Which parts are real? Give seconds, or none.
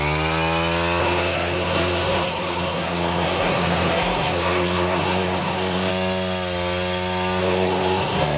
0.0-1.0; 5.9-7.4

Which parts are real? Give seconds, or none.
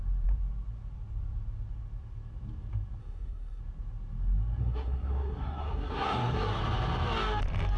0.0-3.0; 3.6-4.6; 6.6-7.8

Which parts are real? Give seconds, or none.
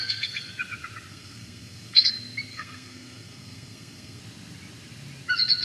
0.5-1.1; 2.1-2.5; 4.2-5.6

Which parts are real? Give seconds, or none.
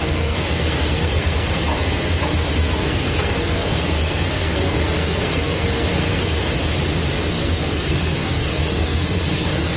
1.7-2.6; 6.4-7.3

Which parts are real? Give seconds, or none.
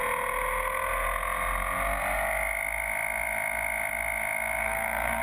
0.0-4.6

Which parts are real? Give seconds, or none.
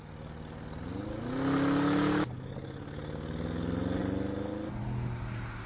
0.0-5.7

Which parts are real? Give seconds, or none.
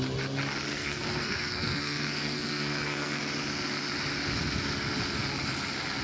0.0-0.7; 3.2-6.0